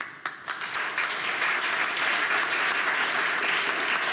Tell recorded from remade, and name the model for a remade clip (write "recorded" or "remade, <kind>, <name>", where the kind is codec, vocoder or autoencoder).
recorded